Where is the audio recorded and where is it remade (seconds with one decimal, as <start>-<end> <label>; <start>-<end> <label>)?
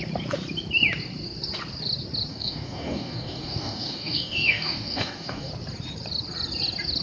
0.0-2.3 recorded; 2.3-5.5 remade; 5.5-7.0 recorded